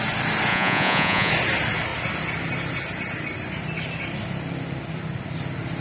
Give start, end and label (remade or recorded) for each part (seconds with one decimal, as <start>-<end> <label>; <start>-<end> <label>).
0.0-0.5 recorded; 0.5-1.3 remade; 1.3-5.8 recorded